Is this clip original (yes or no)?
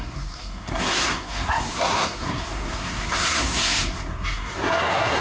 no